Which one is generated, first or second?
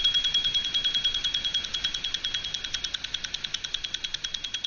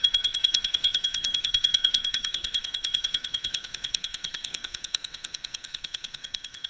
second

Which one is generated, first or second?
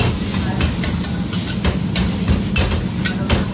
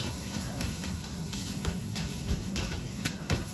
second